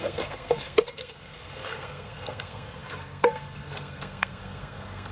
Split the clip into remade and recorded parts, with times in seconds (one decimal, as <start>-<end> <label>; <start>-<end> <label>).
0.0-5.1 remade